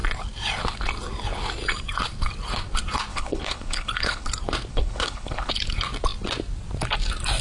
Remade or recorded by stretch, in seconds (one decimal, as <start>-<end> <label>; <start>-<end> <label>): 0.0-3.1 recorded; 3.1-4.3 remade; 4.3-4.7 recorded; 4.7-5.5 remade; 5.5-7.4 recorded